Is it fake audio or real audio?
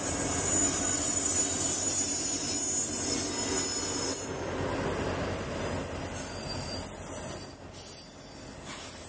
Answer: real